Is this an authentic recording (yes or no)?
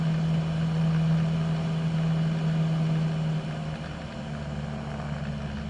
yes